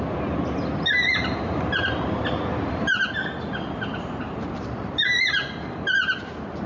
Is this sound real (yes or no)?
yes